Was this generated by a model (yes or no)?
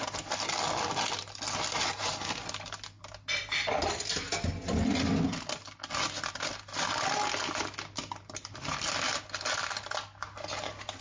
no